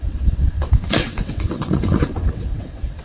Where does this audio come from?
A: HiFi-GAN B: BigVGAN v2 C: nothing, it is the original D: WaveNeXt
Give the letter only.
D